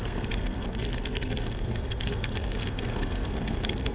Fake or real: fake